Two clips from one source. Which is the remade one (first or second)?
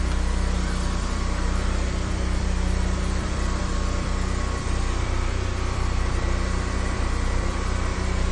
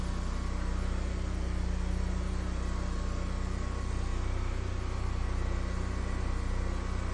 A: first